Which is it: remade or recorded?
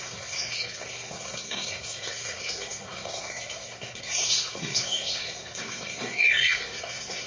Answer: remade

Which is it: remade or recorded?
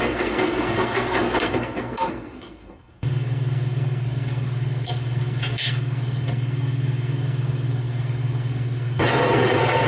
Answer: remade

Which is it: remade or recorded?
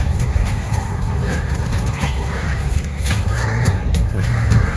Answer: remade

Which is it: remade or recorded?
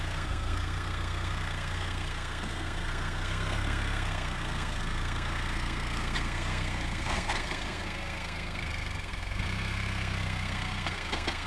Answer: remade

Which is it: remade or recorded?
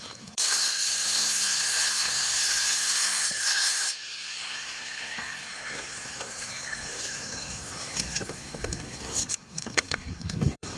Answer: remade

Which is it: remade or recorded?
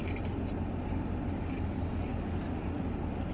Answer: recorded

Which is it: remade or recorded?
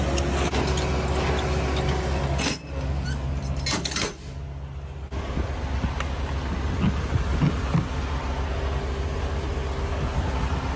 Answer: recorded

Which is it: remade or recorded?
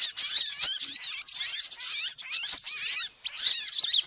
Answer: recorded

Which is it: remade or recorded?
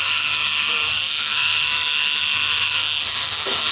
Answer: remade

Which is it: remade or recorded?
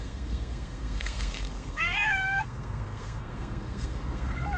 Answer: remade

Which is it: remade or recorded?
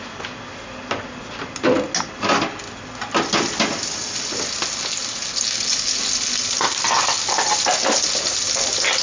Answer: recorded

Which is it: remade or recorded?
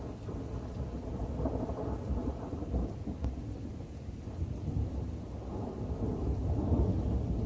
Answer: recorded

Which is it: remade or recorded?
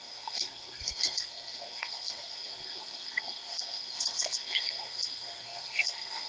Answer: remade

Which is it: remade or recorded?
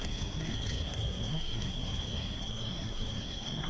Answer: remade